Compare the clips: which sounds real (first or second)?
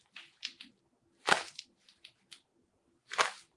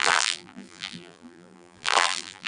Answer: first